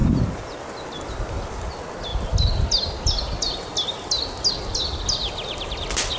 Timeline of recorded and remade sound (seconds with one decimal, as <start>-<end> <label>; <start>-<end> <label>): 0.0-6.2 recorded